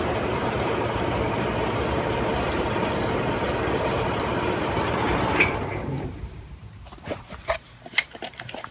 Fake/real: fake